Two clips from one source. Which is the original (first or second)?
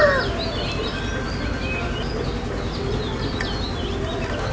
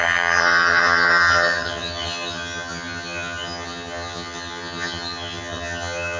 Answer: first